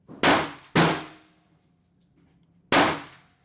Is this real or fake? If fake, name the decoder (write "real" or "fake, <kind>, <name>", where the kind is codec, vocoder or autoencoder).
real